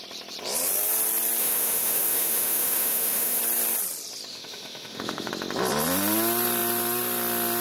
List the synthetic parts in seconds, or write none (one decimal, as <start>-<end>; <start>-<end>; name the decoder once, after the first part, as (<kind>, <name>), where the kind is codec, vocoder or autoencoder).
1.4-3.4 (autoencoder, DAC-VAE); 4.3-5.3